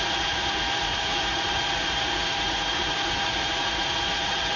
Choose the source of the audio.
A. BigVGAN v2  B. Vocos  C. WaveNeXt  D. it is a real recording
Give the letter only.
B